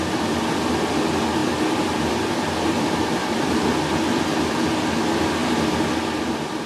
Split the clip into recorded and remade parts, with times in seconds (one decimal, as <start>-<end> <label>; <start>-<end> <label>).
0.0-1.4 recorded; 1.4-4.5 remade; 4.5-6.7 recorded